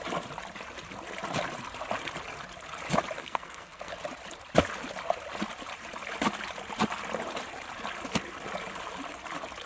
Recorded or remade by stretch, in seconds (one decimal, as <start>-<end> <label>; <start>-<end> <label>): 0.0-3.2 recorded; 3.2-3.9 remade; 3.9-9.7 recorded